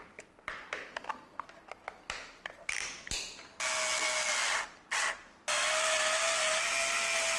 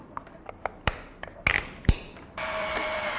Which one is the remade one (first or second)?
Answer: second